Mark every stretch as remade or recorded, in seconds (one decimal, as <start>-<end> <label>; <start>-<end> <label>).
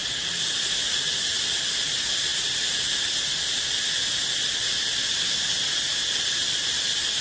0.0-1.5 remade; 1.5-7.2 recorded